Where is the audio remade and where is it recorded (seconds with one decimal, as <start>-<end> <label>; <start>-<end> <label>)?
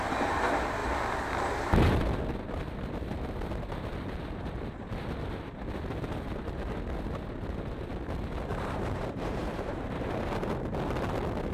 0.0-8.5 recorded; 8.5-10.5 remade; 10.5-11.5 recorded